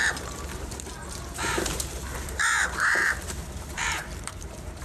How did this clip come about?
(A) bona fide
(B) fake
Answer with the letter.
B